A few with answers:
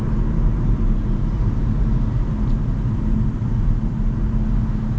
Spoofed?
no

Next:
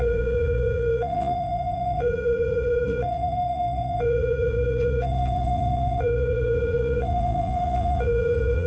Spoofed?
yes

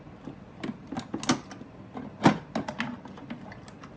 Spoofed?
no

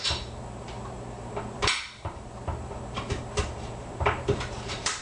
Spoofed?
yes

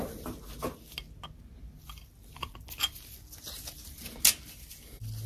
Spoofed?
no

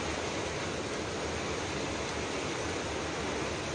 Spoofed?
no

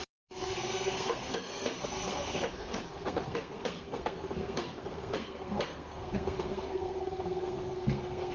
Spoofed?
yes